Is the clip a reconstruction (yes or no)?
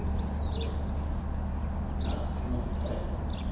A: no